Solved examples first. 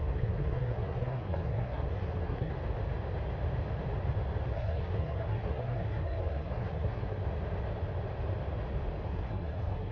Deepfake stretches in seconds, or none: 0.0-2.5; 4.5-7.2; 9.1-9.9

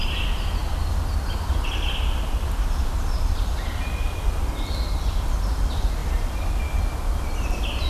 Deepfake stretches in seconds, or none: none

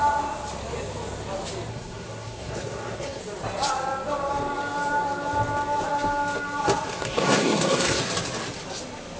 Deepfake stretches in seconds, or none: 1.7-3.2; 6.9-8.0